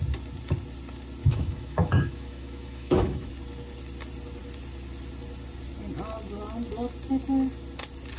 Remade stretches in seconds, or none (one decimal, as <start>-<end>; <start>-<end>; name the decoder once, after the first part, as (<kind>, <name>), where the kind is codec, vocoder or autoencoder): 1.2-3.3 (autoencoder, DAC-VAE)

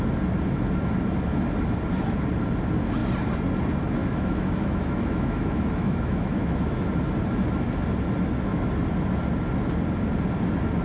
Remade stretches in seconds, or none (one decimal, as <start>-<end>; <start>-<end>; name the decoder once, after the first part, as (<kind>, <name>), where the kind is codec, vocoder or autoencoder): 4.0-6.9 (autoencoder, DAC-VAE)

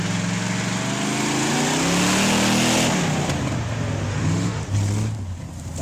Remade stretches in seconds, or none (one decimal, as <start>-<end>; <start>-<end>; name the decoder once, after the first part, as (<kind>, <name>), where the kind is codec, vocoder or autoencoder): 4.1-4.6 (autoencoder, DAC-VAE)